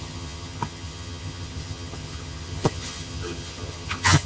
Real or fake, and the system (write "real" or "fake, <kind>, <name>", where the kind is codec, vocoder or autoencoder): fake, vocoder, HiFi-GAN